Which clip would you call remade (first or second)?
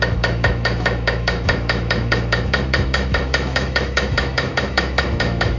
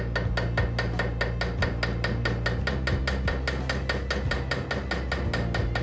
first